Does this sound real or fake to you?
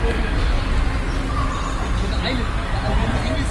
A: real